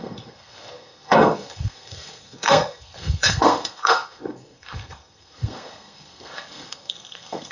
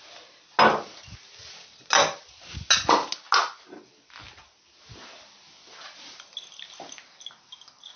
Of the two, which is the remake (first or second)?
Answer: first